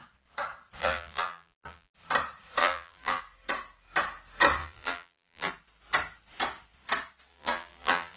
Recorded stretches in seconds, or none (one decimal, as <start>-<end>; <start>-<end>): 0.0-0.8; 1.9-2.6; 3.2-4.6; 5.5-7.3